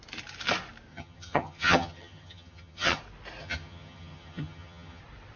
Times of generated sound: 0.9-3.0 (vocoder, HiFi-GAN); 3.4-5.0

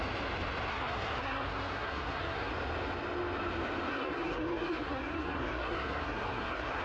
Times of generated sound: 0.7-2.5 (codec, SNAC); 3.9-6.8

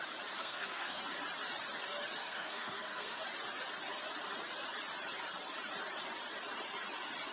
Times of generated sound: 0.4-1.0 (codec, SNAC); 2.2-3.2

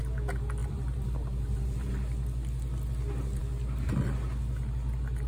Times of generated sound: 0.6-1.9 (vocoder, BigVGAN v2)

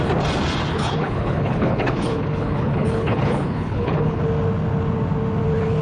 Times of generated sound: 0.7-4.2 (codec, HILCodec)

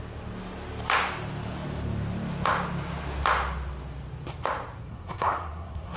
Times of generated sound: 4.9-6.0 (codec, SNAC)

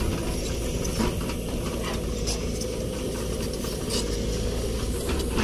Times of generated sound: none

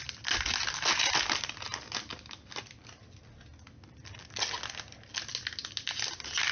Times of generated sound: none